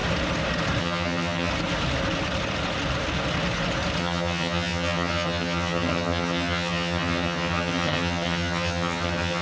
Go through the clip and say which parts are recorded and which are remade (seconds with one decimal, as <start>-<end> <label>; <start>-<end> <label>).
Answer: 0.0-0.8 recorded; 0.8-1.5 remade; 1.5-4.0 recorded; 4.0-9.4 remade